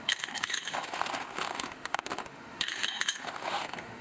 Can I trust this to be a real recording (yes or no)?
no